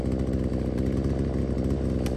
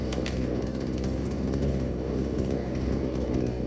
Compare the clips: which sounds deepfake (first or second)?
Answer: second